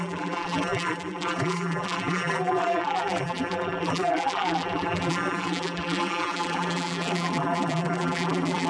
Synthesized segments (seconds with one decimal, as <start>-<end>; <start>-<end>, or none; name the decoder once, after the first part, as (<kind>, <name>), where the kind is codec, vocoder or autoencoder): 0.0-8.7 (vocoder, BigVGAN v2)

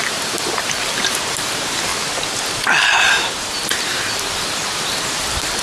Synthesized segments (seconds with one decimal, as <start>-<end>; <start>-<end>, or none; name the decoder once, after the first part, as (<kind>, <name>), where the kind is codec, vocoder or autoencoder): 0.0-1.9 (vocoder, BigVGAN v2); 3.5-5.6

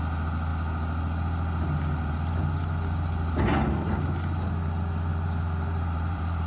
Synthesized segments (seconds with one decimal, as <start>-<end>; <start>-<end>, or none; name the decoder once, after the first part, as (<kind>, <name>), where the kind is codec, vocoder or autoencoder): 5.1-6.5 (vocoder, BigVGAN v2)

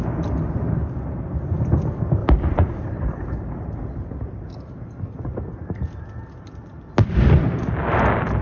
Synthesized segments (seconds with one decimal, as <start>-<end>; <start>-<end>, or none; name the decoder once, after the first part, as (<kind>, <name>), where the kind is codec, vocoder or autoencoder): 2.2-3.7 (vocoder, BigVGAN v2)

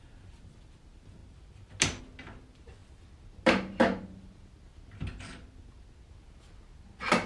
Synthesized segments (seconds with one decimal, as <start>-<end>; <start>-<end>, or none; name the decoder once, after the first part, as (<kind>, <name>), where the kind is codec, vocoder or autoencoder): none